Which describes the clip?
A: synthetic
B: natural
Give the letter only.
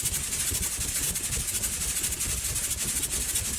B